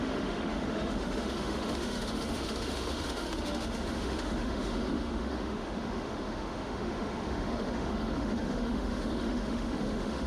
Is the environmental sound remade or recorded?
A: remade